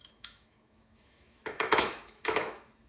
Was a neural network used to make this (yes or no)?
yes